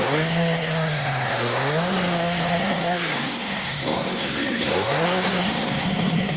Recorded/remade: remade